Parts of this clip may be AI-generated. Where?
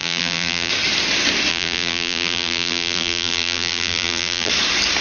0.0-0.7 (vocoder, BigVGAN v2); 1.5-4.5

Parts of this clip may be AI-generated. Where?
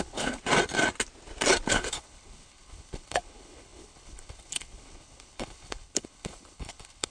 0.0-0.4 (codec, HILCodec); 1.7-7.1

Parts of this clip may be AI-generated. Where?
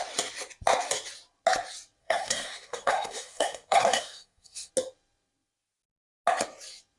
2.0-4.7 (codec, SNAC)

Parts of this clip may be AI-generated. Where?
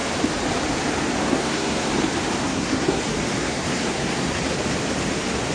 1.2-1.9 (codec, SNAC); 2.4-3.0; 3.4-4.4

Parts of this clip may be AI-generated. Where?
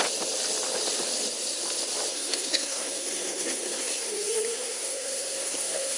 2.1-6.0 (codec, SNAC)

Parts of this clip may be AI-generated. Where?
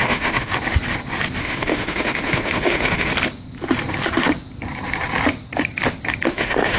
0.0-0.5 (autoencoder, DAC-VAE); 1.4-3.1; 6.3-6.8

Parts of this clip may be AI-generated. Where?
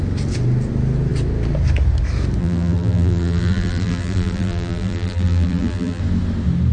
2.4-6.0 (vocoder, BigVGAN v2)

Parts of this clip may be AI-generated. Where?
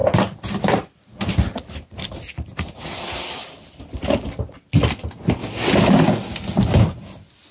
none